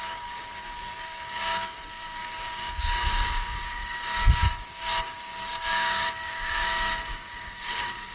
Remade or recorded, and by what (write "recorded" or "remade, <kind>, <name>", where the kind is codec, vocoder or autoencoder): remade, codec, DAC